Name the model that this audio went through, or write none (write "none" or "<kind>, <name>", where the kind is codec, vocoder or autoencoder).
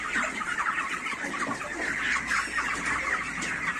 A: none